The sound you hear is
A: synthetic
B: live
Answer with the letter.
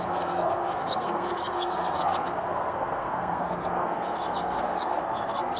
A